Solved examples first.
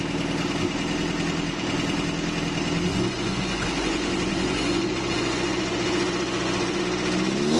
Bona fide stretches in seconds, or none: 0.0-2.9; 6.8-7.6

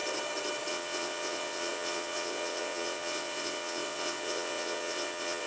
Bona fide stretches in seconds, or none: 0.0-0.7

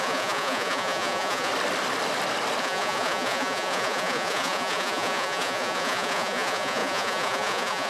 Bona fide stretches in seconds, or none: 1.5-2.6

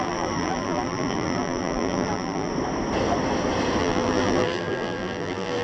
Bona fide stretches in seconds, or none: 2.5-3.8

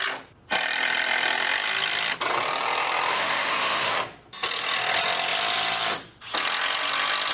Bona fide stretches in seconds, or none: 0.0-3.1; 3.9-7.3